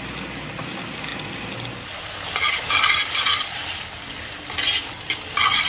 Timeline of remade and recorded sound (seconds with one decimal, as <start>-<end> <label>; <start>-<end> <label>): 0.0-5.7 recorded